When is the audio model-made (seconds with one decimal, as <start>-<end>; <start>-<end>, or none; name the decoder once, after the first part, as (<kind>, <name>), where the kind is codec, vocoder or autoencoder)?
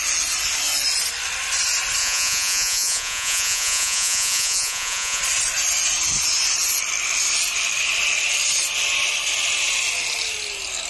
2.0-5.2 (vocoder, Vocos)